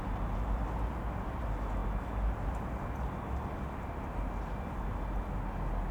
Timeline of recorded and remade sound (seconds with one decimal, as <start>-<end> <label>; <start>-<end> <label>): 0.0-5.9 recorded